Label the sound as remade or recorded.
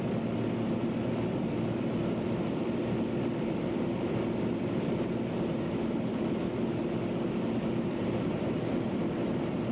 recorded